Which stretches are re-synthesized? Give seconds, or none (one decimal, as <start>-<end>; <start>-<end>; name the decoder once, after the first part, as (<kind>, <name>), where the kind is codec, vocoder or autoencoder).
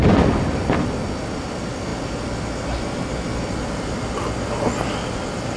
none